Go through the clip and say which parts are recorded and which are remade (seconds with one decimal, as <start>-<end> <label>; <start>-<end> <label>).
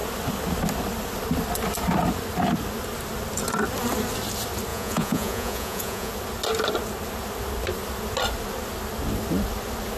0.0-4.7 recorded; 4.7-6.1 remade; 6.1-10.0 recorded